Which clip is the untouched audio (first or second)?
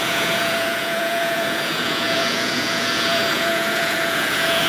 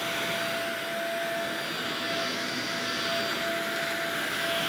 second